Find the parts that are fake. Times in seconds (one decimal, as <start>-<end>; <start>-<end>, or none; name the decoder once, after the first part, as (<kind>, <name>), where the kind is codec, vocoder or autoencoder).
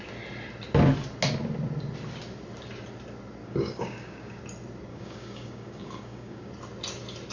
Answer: 3.4-4.4 (codec, DAC); 4.9-6.5